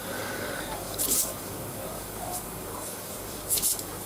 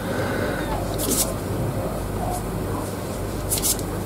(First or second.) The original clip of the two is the second